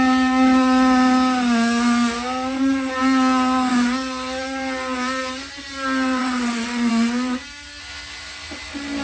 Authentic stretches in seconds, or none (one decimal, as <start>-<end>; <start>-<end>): 0.0-6.2; 6.9-9.0